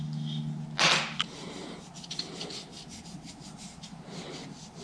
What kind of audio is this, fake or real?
real